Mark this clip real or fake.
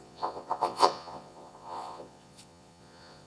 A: fake